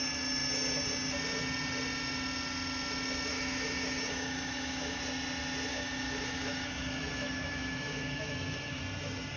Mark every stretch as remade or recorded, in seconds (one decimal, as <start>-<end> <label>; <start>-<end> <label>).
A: 0.0-3.3 recorded; 3.3-5.0 remade; 5.0-5.7 recorded; 5.7-8.8 remade; 8.8-9.4 recorded